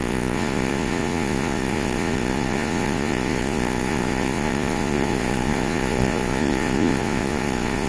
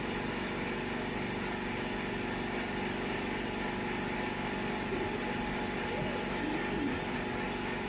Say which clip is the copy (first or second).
first